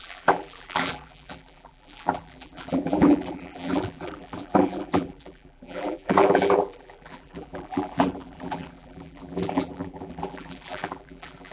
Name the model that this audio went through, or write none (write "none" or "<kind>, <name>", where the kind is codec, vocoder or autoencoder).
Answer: vocoder, BigVGAN v2